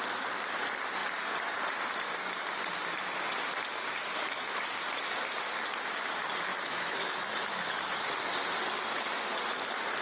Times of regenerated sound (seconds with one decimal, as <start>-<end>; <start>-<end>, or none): 6.5-8.3